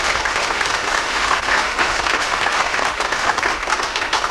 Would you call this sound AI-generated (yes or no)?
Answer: yes